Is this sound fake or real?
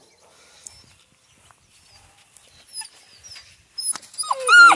real